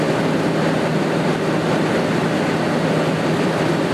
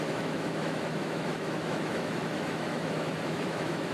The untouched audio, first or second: first